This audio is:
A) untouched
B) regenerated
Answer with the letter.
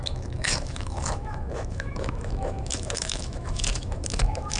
B